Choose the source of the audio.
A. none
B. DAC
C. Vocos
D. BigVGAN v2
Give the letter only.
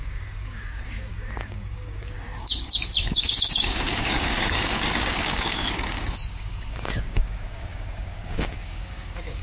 B